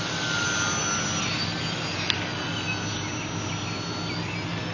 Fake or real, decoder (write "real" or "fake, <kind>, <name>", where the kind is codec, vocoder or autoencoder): real